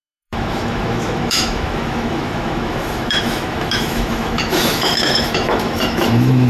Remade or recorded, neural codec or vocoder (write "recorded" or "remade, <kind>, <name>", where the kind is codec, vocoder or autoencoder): remade, autoencoder, DAC-VAE